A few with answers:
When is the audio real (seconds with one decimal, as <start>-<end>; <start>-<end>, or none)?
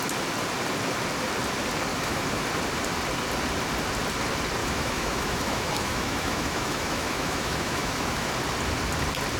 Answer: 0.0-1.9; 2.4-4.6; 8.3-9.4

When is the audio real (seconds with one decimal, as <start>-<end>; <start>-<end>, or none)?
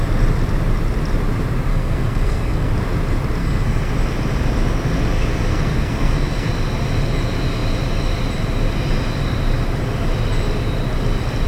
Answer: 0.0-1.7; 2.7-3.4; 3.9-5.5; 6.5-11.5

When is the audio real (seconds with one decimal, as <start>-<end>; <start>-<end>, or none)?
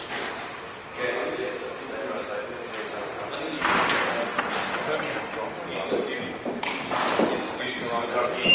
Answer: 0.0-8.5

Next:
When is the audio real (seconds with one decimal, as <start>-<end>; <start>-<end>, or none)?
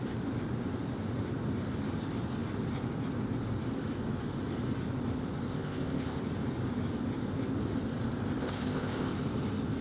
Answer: 0.0-5.5; 6.2-8.4; 9.1-9.8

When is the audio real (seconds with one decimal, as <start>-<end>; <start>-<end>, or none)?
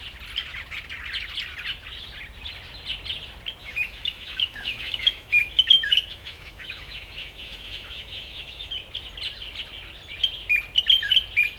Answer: 0.0-3.6; 8.7-11.6